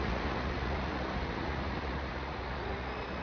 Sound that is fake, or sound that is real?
fake